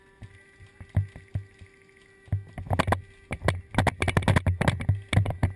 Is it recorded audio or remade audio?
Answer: recorded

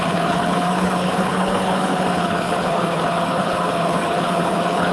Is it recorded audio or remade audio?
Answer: remade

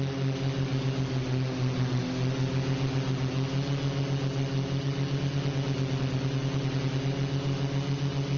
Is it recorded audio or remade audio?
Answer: recorded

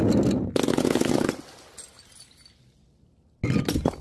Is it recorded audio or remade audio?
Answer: recorded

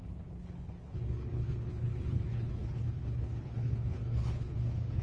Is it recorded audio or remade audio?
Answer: remade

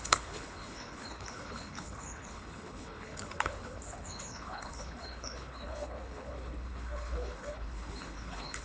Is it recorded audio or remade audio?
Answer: remade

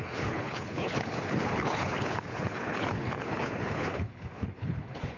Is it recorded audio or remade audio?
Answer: remade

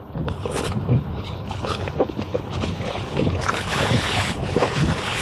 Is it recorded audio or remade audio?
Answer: remade